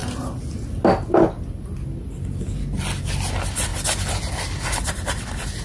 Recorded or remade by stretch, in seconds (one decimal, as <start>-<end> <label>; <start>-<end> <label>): 0.0-5.6 recorded